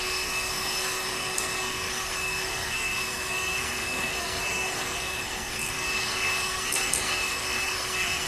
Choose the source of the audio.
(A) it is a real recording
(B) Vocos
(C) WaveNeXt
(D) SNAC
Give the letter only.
D